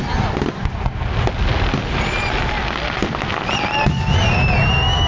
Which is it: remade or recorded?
recorded